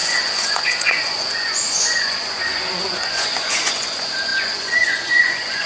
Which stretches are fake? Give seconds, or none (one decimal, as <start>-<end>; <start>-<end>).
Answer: 0.0-5.7